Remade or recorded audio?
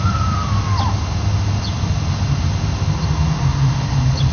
recorded